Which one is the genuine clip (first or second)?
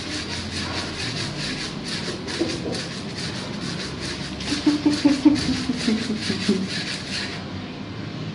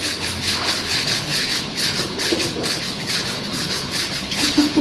first